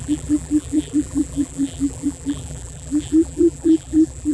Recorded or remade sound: remade